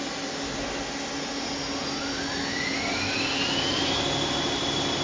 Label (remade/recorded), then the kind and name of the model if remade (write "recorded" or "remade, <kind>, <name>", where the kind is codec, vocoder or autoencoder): recorded